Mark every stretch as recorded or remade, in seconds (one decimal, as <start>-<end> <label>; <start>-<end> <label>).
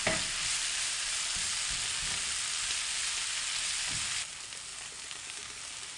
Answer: 0.0-4.7 recorded; 4.7-5.6 remade; 5.6-6.0 recorded